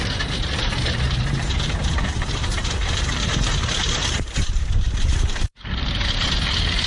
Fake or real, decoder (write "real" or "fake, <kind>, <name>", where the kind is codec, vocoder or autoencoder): fake, vocoder, BigVGAN v2